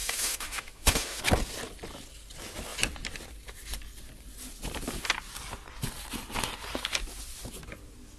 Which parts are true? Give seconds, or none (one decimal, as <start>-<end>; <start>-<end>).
1.2-8.2